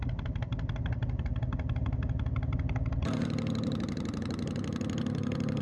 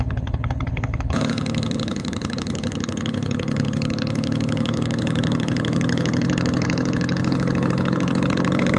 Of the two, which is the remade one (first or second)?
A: second